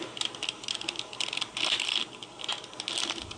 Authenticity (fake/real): real